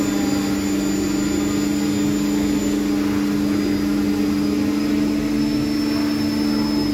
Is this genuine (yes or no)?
yes